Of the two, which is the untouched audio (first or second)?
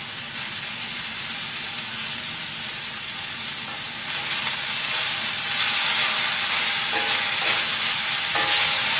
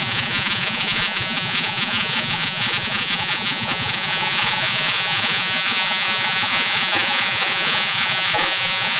first